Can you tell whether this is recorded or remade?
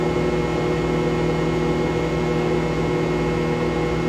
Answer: recorded